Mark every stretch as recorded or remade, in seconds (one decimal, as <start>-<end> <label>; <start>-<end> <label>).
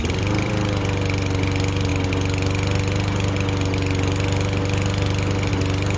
0.0-0.5 remade; 0.5-6.0 recorded